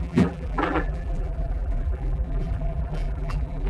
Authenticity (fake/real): fake